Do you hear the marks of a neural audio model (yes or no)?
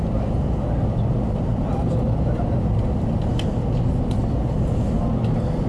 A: no